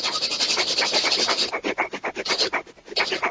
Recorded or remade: recorded